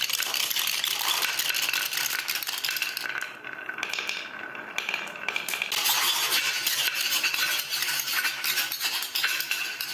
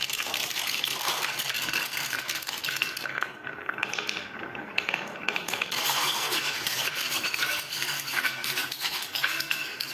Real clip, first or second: first